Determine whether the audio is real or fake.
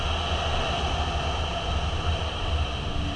real